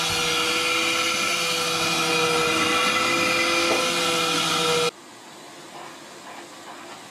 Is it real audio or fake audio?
real